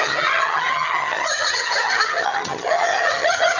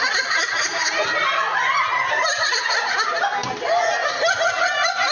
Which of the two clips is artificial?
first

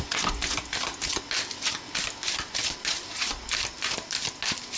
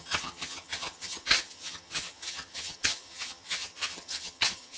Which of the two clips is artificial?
second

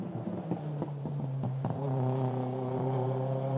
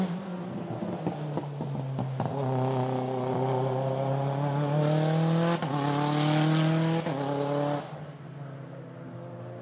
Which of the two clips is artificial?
first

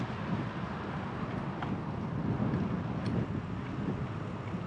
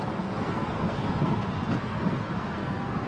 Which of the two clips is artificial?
second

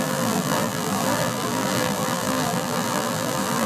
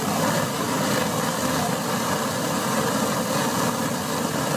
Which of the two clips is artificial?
first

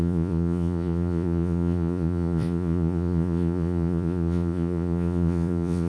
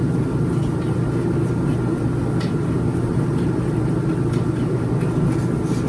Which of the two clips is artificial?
first